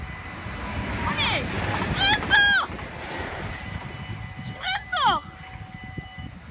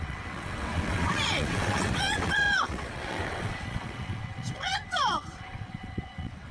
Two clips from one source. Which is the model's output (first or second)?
second